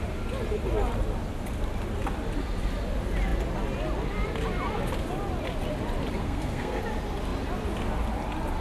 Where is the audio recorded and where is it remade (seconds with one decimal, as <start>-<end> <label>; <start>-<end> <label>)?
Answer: 0.0-6.2 recorded; 6.2-6.8 remade; 6.8-8.6 recorded